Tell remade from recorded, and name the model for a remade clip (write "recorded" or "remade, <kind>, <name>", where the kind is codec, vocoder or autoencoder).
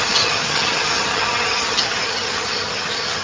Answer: remade, vocoder, HiFi-GAN